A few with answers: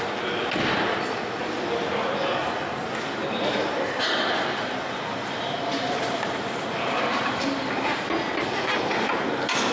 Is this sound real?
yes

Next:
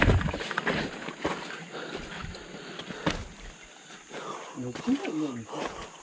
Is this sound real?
yes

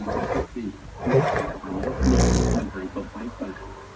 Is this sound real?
yes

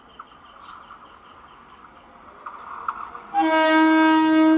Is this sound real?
yes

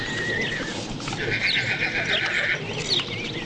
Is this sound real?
yes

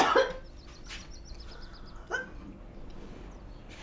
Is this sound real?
yes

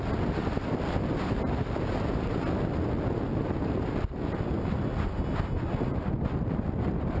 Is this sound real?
yes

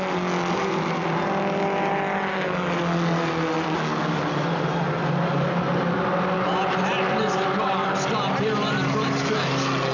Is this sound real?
yes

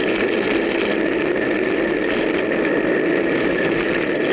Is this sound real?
yes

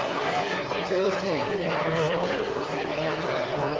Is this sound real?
no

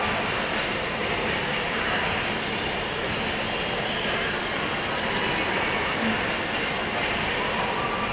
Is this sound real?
yes